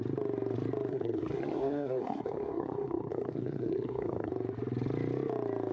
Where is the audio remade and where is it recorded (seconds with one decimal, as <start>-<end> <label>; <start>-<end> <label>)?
0.0-0.9 recorded; 0.9-4.3 remade; 4.3-5.7 recorded